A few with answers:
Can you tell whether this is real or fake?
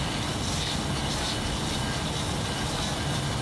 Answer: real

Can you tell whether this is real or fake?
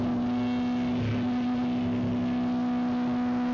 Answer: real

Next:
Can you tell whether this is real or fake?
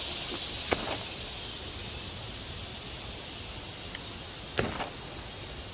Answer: real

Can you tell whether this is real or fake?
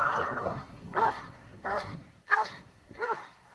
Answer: fake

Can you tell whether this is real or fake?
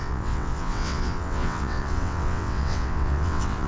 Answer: fake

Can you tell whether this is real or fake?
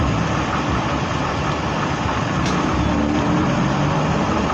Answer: real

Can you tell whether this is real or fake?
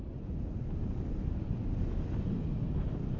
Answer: real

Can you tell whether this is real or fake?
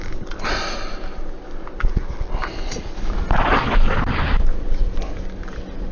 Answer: real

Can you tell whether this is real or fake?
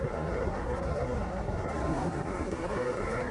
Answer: fake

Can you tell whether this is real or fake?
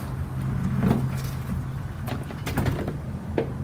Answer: real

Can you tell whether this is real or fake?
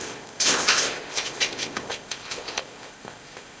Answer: fake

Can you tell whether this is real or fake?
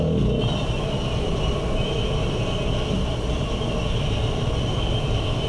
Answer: real